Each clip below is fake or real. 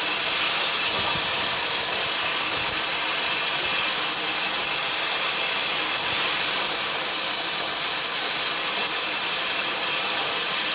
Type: fake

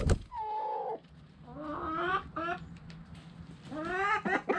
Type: real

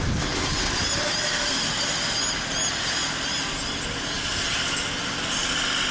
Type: real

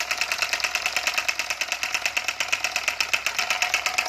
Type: real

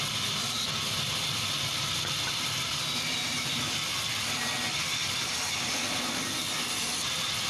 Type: real